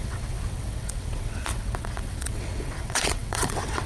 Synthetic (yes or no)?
yes